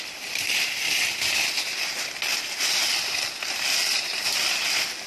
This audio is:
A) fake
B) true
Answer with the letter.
B